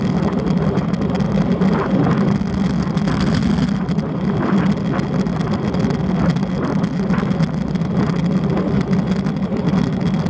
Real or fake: real